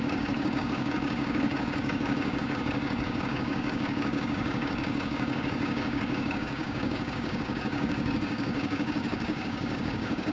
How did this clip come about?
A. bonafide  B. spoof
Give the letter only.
B